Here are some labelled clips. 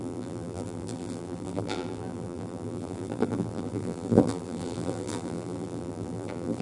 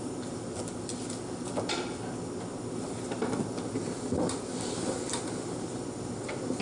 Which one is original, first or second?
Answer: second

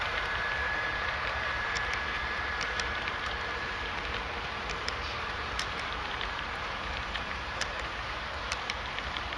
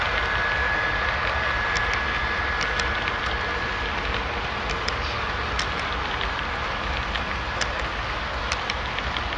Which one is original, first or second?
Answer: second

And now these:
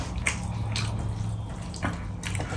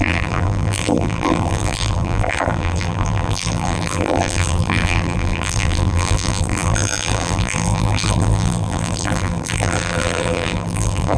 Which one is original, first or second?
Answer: first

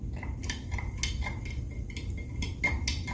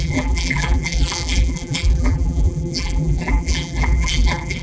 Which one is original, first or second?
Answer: first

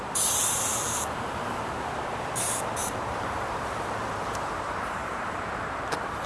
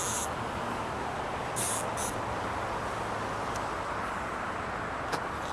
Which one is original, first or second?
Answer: second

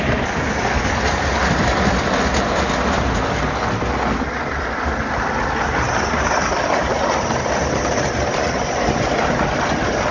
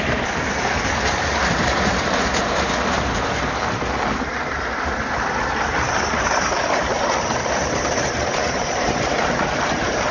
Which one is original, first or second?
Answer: first